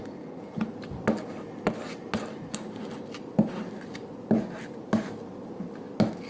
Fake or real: real